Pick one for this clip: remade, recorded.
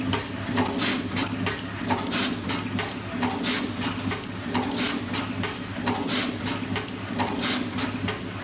recorded